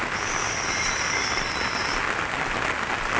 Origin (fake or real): real